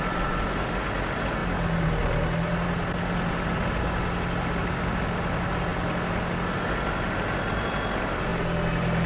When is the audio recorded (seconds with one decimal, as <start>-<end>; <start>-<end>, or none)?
0.0-9.1